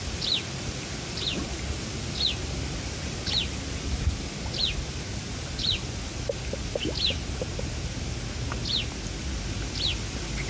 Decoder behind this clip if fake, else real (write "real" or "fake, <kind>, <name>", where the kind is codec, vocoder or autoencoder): real